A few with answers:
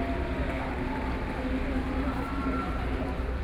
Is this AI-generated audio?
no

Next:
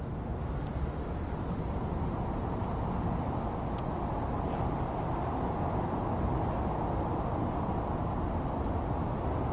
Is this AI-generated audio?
no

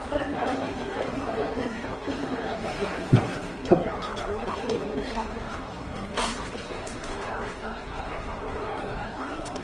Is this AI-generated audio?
yes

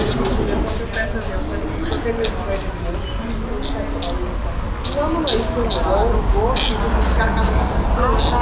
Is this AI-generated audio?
no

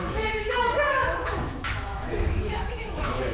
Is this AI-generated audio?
yes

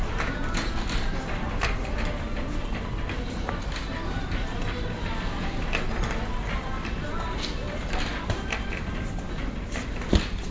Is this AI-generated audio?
no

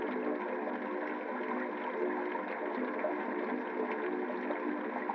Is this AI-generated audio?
no